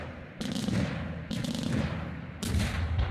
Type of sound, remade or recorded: recorded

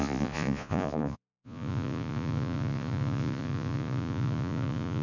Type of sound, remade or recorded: remade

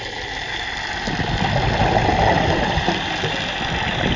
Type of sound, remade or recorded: recorded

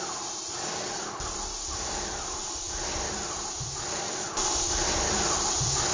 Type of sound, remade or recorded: recorded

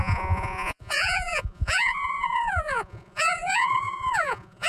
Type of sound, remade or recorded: remade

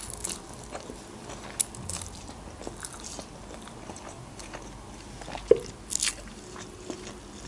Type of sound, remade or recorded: recorded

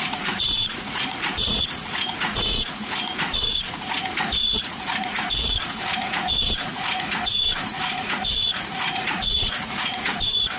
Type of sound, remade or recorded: remade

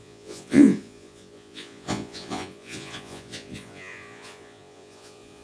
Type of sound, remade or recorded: remade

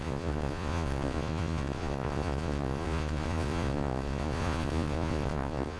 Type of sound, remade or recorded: remade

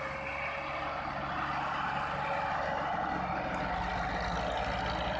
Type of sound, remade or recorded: recorded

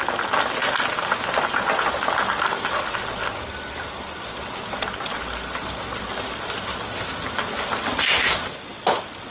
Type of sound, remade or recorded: recorded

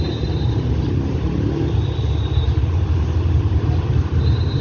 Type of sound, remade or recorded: recorded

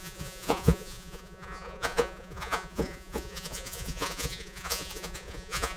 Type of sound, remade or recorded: remade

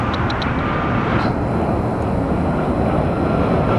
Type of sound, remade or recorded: recorded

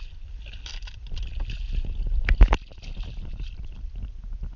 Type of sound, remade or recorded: recorded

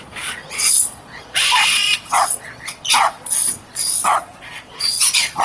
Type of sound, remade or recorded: remade